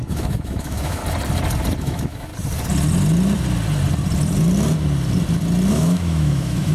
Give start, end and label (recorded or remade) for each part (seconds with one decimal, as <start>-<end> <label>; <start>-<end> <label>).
0.0-1.0 remade; 1.0-1.8 recorded; 1.8-2.3 remade; 2.3-5.7 recorded; 5.7-6.7 remade